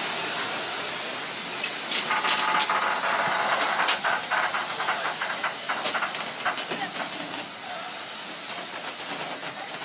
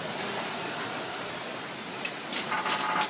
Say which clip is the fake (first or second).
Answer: second